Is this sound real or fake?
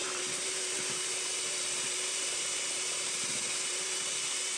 fake